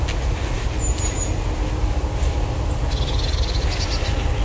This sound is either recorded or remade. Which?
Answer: recorded